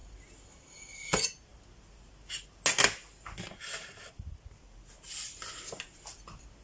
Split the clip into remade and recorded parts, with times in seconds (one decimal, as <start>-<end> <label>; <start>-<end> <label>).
0.0-6.6 recorded